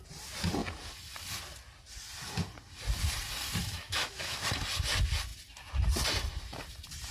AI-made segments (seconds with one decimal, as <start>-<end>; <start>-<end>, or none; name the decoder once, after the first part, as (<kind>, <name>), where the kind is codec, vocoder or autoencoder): 3.6-4.4 (autoencoder, DAC-VAE)